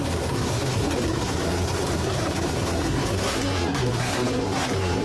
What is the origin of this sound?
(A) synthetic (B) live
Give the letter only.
A